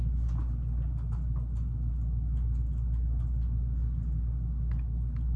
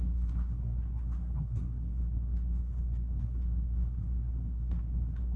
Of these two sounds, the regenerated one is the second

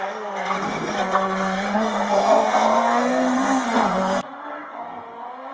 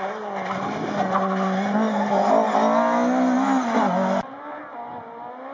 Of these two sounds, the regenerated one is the first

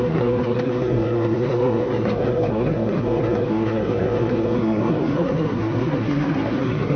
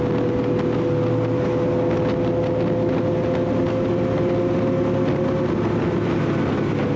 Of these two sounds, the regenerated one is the first